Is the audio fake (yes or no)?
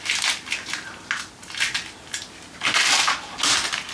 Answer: no